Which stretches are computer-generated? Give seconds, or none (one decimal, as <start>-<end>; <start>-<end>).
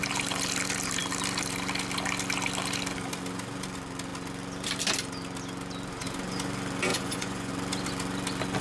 6.9-7.5